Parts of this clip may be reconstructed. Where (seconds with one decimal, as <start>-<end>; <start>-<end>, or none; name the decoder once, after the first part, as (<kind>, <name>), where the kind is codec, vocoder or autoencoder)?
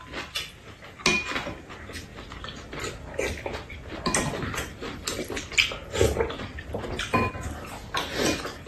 none